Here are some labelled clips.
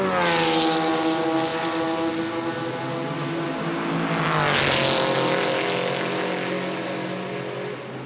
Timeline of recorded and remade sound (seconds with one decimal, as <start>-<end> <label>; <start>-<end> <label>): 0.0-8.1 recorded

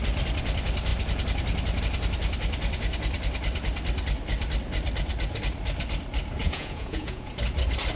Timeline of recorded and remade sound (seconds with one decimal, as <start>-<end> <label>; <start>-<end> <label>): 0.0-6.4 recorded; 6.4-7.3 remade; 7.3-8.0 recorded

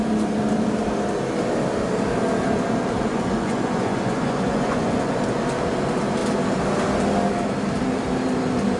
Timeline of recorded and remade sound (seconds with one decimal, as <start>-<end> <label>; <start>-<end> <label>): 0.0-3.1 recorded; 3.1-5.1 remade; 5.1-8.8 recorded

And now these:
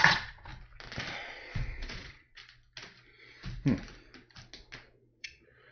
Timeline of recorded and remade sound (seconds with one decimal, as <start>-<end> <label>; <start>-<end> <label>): 0.0-0.5 remade; 0.5-1.2 recorded; 1.2-2.4 remade; 2.4-5.2 recorded; 5.2-5.7 remade